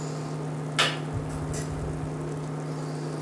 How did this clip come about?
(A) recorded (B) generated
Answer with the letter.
A